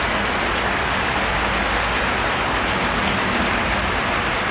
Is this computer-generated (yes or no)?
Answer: no